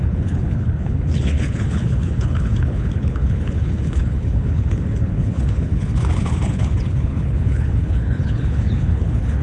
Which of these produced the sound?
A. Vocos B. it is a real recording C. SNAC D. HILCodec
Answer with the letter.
D